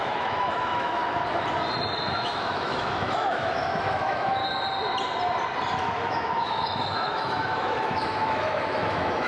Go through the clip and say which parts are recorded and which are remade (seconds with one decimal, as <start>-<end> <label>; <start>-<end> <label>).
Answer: 0.0-1.0 remade; 1.0-1.8 recorded; 1.8-4.4 remade; 4.4-5.8 recorded; 5.8-9.3 remade